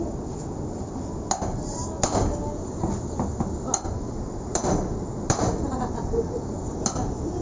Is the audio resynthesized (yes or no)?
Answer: no